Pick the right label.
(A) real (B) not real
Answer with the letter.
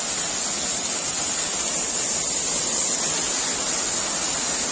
A